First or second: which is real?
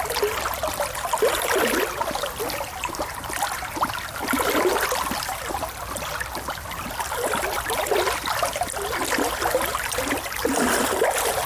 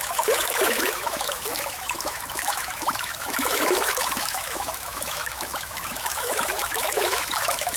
first